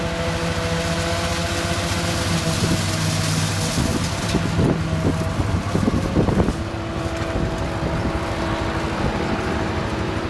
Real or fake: real